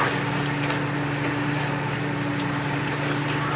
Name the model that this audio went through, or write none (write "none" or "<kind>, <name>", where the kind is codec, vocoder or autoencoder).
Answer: none